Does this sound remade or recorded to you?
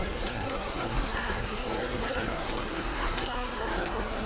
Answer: remade